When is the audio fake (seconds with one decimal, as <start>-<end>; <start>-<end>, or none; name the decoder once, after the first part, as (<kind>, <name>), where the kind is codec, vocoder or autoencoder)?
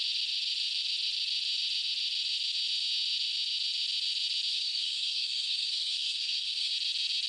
4.5-6.7 (codec, SNAC)